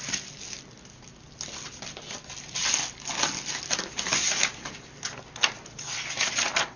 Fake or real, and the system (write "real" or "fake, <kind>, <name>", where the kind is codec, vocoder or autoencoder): real